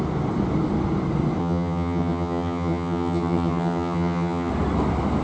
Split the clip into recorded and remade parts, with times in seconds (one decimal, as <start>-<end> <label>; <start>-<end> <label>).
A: 0.0-1.4 recorded; 1.4-4.5 remade; 4.5-5.2 recorded

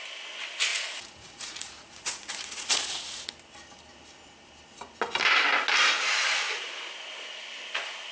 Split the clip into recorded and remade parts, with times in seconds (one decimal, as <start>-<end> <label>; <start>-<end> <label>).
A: 0.0-0.7 recorded; 0.7-3.2 remade; 3.2-8.1 recorded

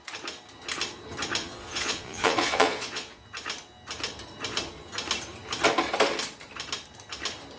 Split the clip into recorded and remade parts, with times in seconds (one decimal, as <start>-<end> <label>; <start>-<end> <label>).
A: 0.0-1.4 recorded; 1.4-3.2 remade; 3.2-7.6 recorded